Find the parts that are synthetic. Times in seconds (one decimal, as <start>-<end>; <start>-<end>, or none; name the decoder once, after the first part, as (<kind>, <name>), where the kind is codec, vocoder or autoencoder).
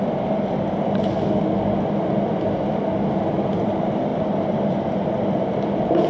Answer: none